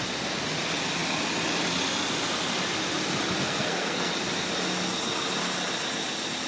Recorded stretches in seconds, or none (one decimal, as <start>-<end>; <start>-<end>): 0.0-3.4; 4.1-6.5